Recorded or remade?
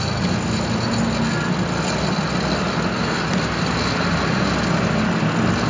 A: recorded